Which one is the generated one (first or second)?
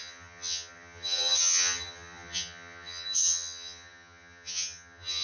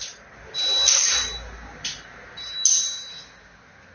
first